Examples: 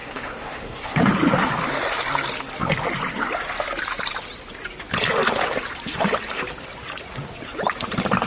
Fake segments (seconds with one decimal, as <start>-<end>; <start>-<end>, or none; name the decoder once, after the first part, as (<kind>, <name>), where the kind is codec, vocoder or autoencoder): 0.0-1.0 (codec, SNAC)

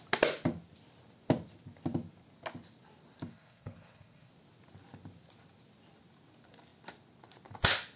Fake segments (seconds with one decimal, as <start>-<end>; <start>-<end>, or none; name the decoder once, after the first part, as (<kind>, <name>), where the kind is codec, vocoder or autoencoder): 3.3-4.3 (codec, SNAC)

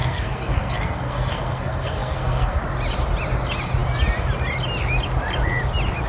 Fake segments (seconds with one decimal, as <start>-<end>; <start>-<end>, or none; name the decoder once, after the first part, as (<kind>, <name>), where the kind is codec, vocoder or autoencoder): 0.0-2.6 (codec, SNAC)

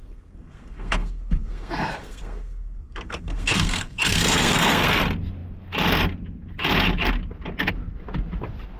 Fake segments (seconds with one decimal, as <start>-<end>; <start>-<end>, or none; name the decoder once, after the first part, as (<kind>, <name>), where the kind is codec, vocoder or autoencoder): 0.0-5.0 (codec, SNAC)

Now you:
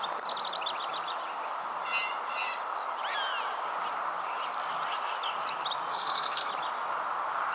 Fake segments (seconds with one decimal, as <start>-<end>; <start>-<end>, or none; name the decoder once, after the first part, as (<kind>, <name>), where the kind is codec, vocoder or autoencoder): 5.9-6.5 (codec, SNAC)

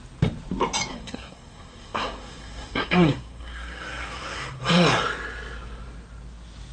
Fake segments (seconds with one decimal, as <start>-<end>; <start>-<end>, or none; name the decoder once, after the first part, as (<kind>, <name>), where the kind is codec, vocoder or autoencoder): 0.9-4.6 (codec, SNAC)